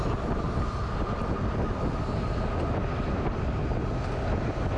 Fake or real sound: real